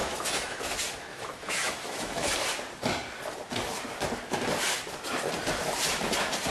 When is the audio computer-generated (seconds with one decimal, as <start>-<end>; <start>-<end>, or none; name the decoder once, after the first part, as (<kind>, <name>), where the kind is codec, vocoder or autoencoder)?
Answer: 0.0-0.6 (autoencoder, DAC-VAE); 1.1-2.3